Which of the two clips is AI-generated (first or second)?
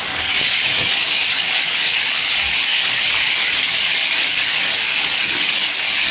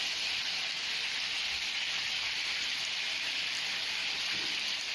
first